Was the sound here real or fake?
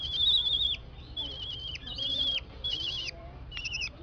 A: fake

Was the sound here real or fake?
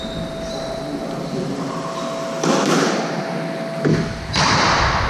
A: real